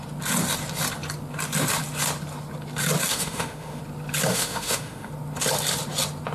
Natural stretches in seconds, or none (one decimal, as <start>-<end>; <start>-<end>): 0.0-3.1; 3.8-4.3; 5.1-6.3